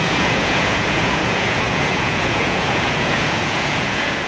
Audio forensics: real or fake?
fake